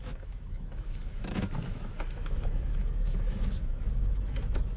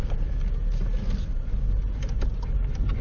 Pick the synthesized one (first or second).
first